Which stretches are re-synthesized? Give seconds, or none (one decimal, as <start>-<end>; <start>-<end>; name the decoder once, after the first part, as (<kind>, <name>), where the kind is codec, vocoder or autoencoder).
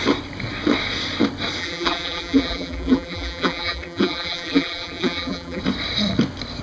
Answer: 1.6-5.6 (vocoder, BigVGAN v2)